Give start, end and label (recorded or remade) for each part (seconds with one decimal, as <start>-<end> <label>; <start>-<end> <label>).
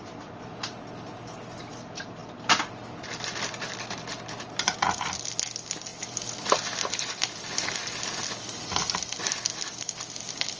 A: 0.0-10.6 recorded